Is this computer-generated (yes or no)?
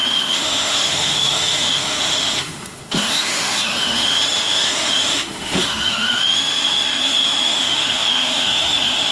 yes